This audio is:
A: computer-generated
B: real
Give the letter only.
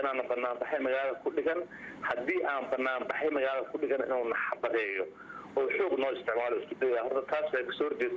B